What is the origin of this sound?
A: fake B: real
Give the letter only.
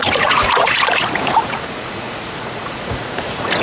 A